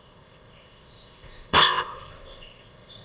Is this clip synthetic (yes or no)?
yes